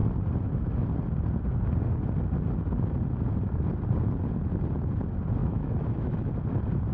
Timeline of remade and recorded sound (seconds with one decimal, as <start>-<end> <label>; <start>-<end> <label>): 0.0-5.4 recorded; 5.4-6.3 remade; 6.3-6.9 recorded